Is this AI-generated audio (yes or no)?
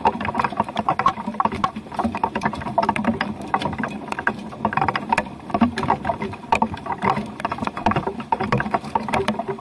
yes